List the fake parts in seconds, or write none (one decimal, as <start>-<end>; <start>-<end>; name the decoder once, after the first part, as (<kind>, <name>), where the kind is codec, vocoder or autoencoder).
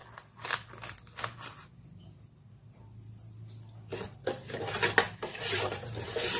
none